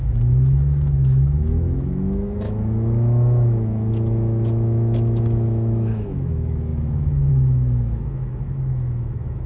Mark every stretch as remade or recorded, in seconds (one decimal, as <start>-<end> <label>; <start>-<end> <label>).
0.0-9.5 remade